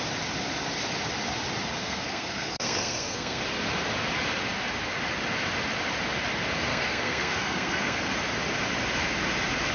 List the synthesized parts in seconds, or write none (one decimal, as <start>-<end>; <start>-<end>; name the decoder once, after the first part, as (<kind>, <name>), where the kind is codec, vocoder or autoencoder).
1.8-3.4 (codec, SNAC); 6.7-8.0